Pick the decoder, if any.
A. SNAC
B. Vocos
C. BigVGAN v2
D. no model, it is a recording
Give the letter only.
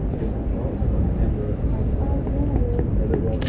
D